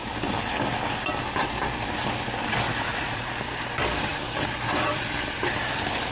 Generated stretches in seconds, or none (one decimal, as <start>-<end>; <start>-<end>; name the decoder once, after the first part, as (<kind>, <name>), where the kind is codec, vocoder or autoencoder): 2.7-3.3 (vocoder, Vocos)